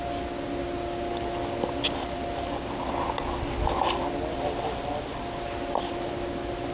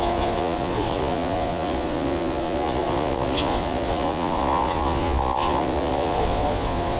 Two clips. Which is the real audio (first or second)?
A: first